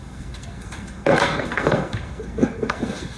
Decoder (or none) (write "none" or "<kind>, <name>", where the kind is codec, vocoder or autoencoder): codec, SNAC